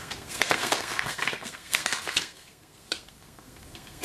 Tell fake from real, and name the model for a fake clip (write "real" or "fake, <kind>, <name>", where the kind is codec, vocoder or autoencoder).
fake, codec, SNAC